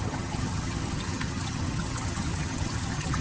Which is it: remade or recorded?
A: remade